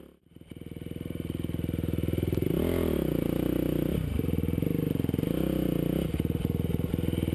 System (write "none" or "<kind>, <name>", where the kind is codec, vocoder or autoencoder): none